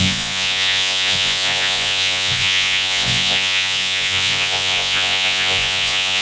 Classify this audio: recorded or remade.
remade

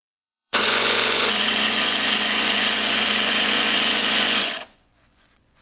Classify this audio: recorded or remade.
remade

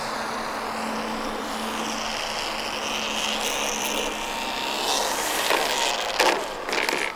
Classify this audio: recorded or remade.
recorded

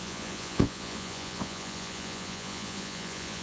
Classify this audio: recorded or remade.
remade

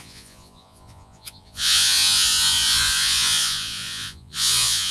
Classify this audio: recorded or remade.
remade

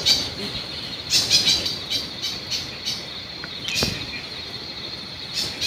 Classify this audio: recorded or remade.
recorded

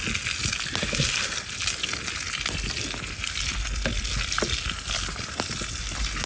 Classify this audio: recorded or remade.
recorded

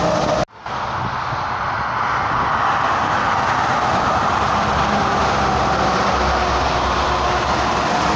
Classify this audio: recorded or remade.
recorded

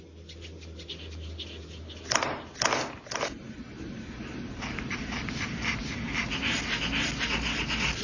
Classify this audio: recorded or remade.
recorded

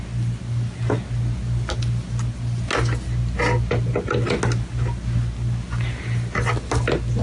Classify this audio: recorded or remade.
recorded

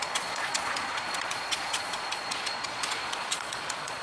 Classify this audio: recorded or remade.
remade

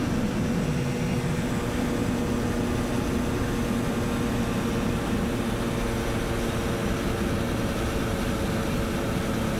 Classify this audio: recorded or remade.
recorded